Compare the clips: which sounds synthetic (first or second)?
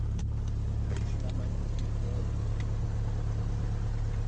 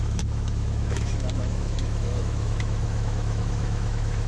second